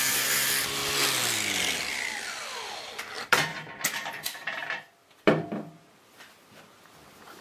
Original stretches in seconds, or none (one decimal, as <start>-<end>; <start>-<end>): 0.8-1.9; 3.5-4.1; 4.6-7.4